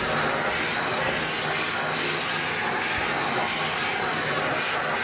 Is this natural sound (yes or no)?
yes